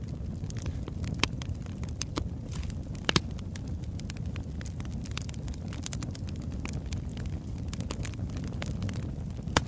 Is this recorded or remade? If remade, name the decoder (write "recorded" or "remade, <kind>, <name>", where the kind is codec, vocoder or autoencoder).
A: recorded